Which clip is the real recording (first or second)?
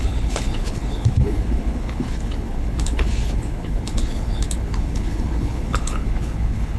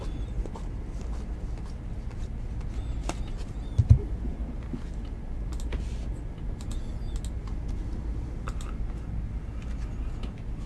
second